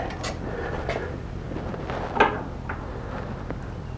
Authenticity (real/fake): real